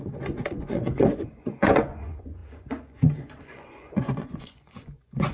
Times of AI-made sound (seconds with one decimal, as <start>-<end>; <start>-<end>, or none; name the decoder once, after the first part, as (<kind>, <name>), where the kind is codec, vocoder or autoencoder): 0.0-5.3 (vocoder, Vocos)